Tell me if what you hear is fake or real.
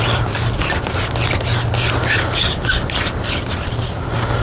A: real